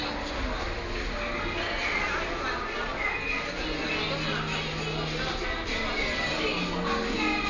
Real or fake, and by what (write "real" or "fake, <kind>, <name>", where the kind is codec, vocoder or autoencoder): real